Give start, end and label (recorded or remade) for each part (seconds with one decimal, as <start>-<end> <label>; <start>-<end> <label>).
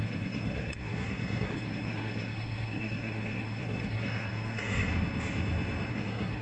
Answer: 0.0-4.9 remade; 4.9-5.9 recorded; 5.9-6.4 remade